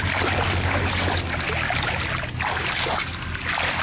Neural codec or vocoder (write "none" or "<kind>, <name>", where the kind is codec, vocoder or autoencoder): none